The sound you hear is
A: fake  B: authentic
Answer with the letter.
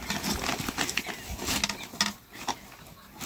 B